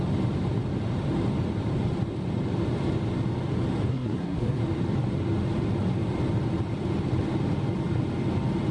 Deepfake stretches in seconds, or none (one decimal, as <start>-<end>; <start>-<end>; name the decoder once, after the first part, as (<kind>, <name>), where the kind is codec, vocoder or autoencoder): 3.9-4.6 (codec, SNAC)